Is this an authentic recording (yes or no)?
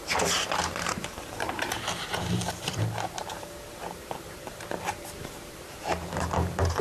no